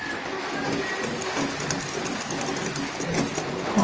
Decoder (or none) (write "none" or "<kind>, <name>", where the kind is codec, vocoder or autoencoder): none